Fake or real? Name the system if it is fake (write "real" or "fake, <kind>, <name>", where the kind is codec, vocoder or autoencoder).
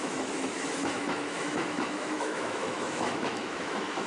fake, autoencoder, DAC-VAE